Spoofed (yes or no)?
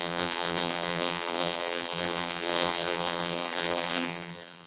yes